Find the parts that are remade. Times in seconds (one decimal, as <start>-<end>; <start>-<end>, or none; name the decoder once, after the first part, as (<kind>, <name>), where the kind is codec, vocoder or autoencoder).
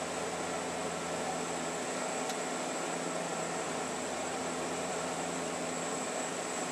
3.3-6.0 (vocoder, BigVGAN v2)